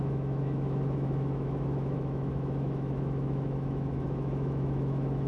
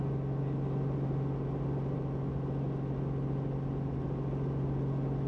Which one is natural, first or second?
second